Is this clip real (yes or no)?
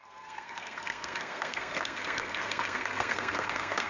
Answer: no